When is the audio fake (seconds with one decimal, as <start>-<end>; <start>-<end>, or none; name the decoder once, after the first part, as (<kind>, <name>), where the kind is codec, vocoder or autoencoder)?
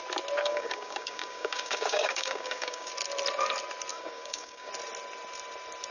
0.4-2.9 (codec, DAC); 3.9-4.7